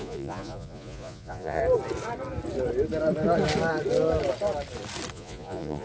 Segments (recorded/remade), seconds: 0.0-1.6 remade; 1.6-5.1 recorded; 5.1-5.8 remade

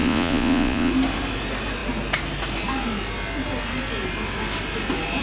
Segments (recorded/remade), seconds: 0.0-0.9 remade; 0.9-5.2 recorded

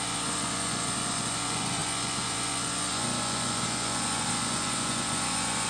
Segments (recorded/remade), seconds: 0.0-5.7 remade

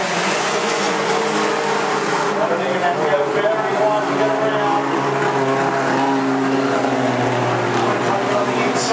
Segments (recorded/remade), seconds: 0.0-1.1 remade; 1.1-8.9 recorded

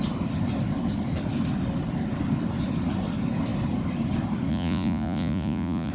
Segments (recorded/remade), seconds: 0.0-4.5 recorded; 4.5-5.9 remade

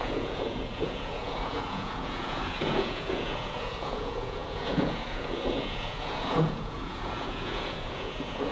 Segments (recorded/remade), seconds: 0.0-8.5 remade

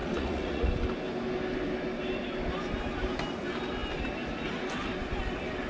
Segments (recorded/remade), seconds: 0.0-0.7 remade; 0.7-5.7 recorded